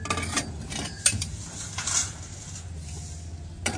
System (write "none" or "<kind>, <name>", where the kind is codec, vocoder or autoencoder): none